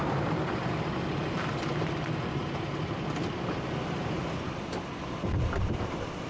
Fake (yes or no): no